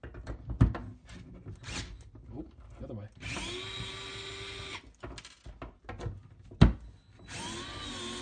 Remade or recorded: recorded